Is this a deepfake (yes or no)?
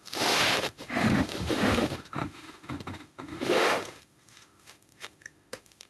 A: yes